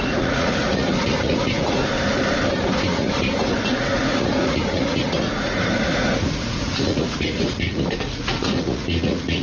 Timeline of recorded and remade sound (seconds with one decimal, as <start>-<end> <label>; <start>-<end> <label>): 0.0-1.8 remade; 1.8-2.9 recorded; 2.9-9.4 remade